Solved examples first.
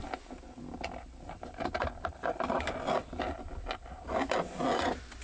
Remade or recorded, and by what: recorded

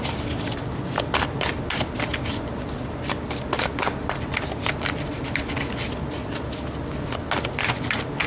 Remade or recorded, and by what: recorded